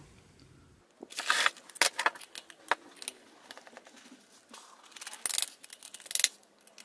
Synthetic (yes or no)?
no